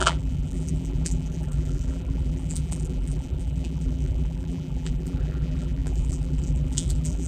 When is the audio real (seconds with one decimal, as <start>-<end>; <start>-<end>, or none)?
none

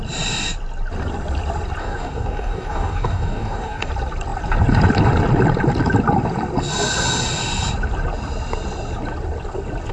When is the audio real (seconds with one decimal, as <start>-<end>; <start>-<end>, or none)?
0.0-1.8; 3.9-9.9

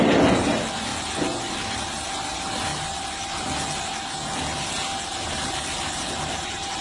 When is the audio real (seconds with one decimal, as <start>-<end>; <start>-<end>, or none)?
0.0-5.1

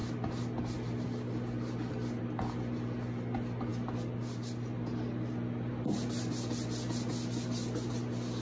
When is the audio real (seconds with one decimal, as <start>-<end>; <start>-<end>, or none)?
0.0-8.4

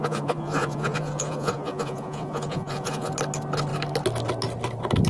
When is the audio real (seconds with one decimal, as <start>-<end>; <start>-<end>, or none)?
3.1-5.1

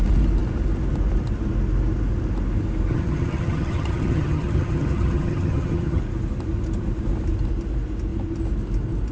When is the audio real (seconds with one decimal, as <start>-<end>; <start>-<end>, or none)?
0.0-2.9; 6.0-9.1

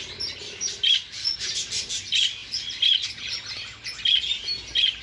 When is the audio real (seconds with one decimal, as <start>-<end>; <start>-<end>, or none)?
0.0-5.0

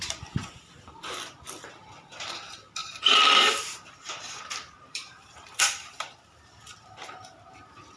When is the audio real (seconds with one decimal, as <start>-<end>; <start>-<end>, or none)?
0.0-2.8; 6.6-8.0